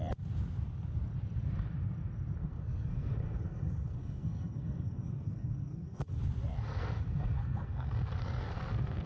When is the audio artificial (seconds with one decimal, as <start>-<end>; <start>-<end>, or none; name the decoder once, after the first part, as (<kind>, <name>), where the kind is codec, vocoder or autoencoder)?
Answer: 2.4-6.2 (codec, SNAC); 6.7-9.1